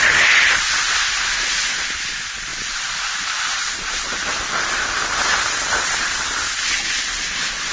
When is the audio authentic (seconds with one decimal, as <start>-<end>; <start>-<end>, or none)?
0.0-7.7